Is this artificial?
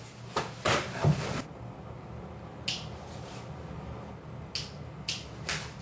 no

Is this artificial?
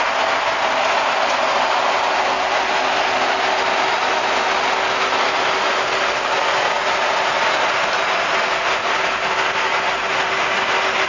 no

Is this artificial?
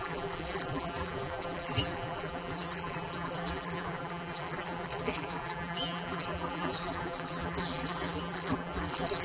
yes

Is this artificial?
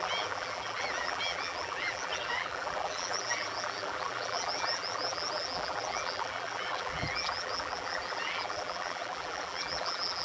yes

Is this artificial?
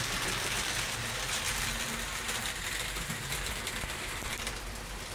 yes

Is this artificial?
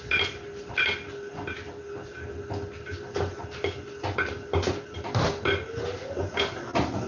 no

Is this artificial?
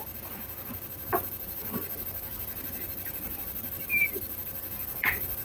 yes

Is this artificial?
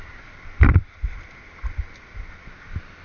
no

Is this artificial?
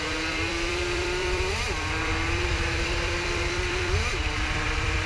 yes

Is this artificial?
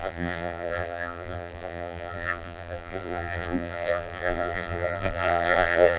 yes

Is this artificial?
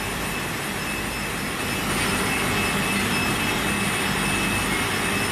no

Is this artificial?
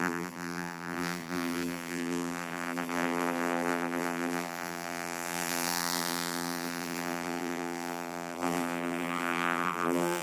yes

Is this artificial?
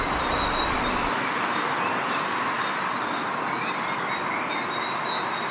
no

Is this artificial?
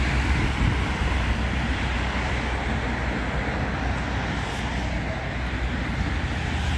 no